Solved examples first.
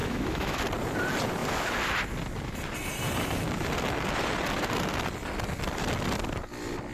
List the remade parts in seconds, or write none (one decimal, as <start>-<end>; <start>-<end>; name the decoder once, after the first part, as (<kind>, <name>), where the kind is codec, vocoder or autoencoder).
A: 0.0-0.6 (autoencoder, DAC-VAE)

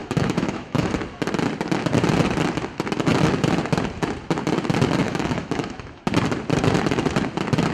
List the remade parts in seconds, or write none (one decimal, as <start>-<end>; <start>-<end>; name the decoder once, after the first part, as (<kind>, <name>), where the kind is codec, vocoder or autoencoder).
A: 0.0-0.9 (autoencoder, DAC-VAE); 5.0-6.0

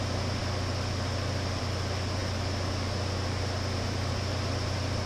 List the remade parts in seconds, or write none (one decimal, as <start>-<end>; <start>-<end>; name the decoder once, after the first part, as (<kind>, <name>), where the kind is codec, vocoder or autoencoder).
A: none